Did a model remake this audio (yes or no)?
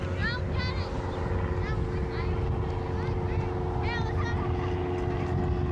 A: no